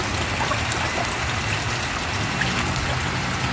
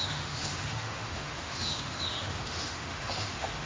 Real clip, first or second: first